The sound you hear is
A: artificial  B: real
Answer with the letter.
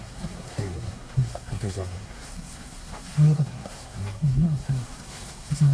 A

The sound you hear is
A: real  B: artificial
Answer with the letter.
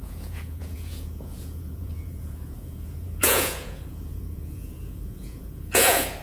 B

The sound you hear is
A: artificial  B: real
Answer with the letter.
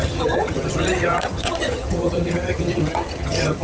A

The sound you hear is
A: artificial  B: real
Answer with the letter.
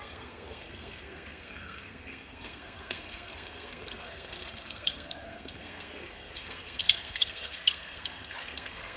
A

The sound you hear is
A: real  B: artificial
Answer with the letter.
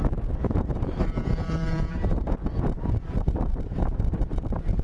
B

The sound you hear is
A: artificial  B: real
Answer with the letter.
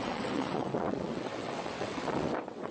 A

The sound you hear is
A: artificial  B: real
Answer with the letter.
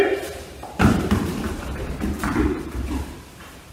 A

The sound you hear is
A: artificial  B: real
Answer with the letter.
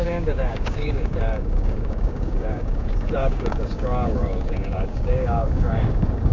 A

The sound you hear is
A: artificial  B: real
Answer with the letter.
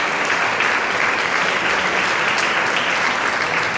B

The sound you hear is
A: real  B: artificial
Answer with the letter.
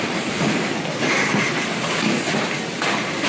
A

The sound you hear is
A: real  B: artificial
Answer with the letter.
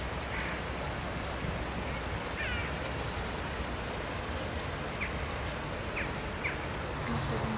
A